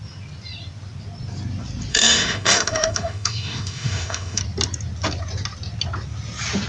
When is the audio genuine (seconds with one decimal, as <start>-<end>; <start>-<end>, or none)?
0.0-1.9; 4.4-6.7